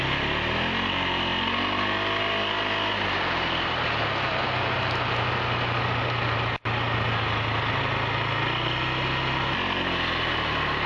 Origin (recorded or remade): recorded